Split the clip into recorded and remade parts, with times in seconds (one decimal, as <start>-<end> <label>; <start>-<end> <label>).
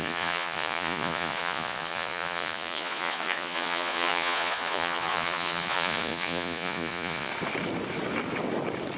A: 0.0-7.3 remade; 7.3-9.0 recorded